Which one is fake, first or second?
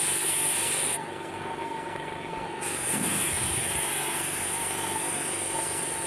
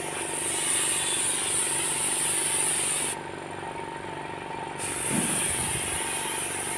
first